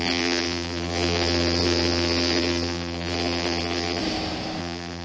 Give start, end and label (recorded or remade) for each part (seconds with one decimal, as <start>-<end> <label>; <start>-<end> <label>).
0.0-4.0 remade; 4.0-4.6 recorded; 4.6-5.0 remade